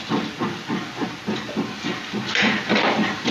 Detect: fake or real real